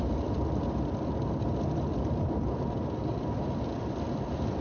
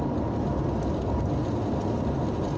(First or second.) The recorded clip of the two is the second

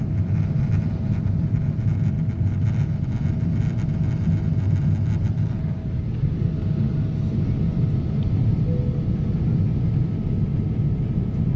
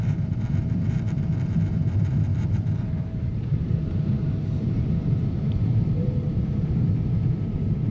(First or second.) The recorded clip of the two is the first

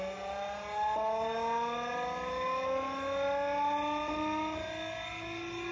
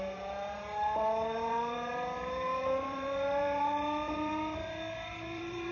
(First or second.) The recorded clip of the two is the first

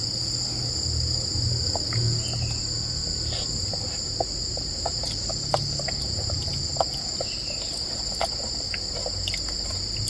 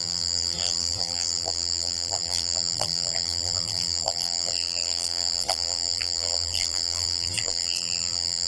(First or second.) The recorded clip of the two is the first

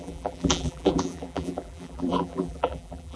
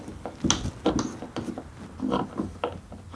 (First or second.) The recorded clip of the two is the second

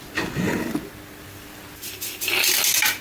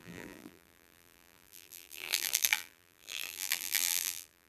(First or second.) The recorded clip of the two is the first